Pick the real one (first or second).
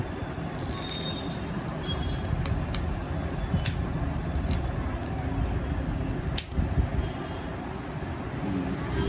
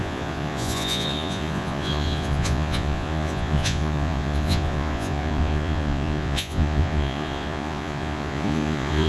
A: first